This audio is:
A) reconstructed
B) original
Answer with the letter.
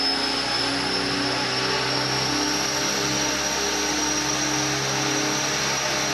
B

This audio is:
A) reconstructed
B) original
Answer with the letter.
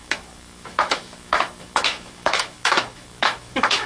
A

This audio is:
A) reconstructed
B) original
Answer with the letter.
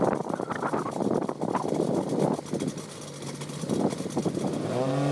B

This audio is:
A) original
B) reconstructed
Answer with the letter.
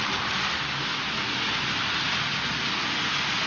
A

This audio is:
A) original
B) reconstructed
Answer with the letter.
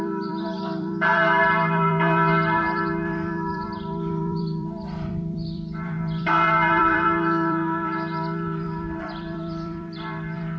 B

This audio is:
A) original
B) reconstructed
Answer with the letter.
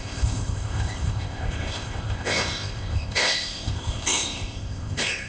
B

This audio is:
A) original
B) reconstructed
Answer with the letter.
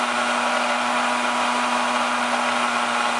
A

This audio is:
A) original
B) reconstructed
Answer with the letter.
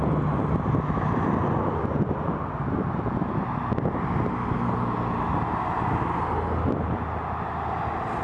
A